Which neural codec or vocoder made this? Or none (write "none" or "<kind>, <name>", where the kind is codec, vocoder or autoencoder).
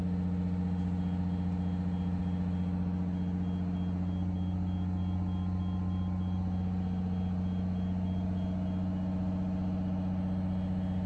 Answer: none